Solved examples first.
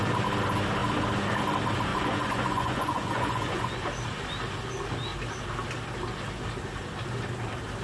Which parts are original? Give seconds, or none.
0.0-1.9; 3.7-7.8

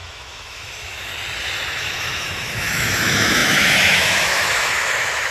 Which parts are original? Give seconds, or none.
1.1-1.7

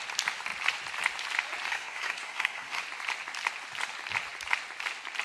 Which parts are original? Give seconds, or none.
0.0-1.7; 2.8-5.2

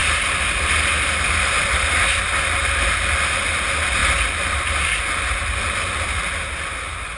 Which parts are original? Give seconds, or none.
0.0-7.2

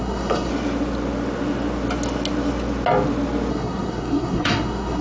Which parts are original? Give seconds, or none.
0.5-3.5